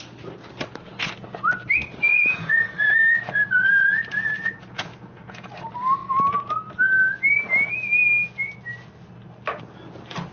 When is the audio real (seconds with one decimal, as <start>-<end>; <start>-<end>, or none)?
0.0-2.1; 5.5-10.3